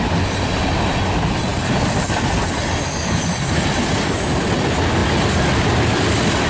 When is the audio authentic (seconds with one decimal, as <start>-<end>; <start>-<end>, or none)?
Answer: 0.0-6.5